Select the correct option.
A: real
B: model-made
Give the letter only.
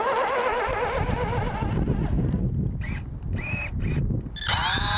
A